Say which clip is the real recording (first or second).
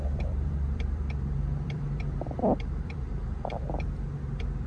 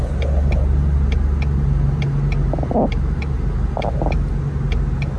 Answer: second